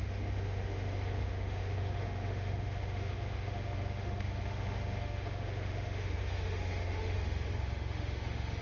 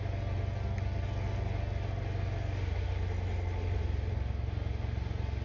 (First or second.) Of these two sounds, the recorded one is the second